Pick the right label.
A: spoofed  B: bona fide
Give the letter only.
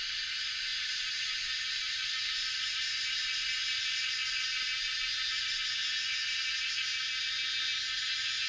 B